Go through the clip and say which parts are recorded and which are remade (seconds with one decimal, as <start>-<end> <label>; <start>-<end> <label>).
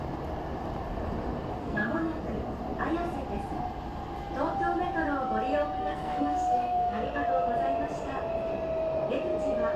0.0-1.6 recorded; 1.6-2.2 remade; 2.2-5.8 recorded; 5.8-7.3 remade; 7.3-9.8 recorded